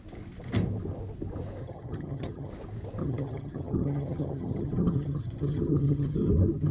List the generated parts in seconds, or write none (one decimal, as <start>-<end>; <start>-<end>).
1.6-2.5; 3.0-6.3